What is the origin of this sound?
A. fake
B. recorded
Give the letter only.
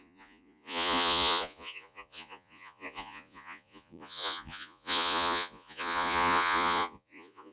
A